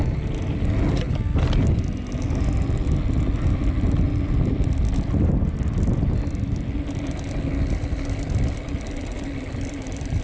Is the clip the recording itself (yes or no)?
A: yes